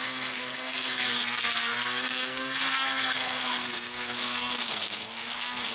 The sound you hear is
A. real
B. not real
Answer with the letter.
B